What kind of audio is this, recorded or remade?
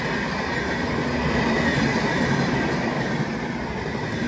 recorded